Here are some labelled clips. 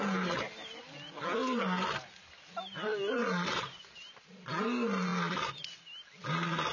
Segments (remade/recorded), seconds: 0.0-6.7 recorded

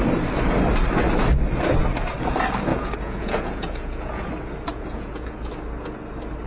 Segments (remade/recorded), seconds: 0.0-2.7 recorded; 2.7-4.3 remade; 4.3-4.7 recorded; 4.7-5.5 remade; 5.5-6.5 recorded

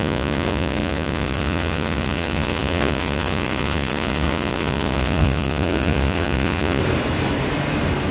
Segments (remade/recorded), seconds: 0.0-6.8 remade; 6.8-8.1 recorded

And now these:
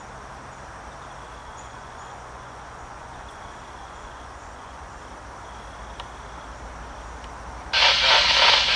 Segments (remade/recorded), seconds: 0.0-1.4 recorded; 1.4-3.4 remade; 3.4-3.8 recorded; 3.8-4.9 remade; 4.9-8.8 recorded